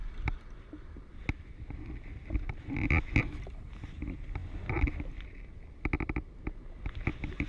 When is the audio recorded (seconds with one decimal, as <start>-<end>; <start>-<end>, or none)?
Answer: 0.0-7.5